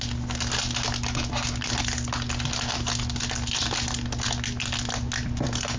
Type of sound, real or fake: real